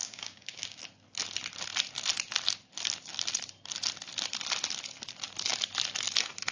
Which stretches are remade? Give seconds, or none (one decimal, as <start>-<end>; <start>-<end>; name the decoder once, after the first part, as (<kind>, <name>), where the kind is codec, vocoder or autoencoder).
0.0-0.8 (codec, DAC)